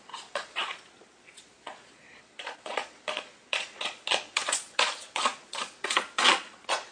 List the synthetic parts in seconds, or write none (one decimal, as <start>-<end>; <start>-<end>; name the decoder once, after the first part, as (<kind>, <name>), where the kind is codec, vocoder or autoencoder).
0.0-6.9 (vocoder, Vocos)